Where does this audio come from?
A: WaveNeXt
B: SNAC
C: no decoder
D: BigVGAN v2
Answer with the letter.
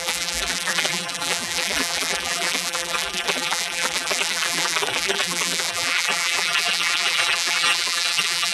D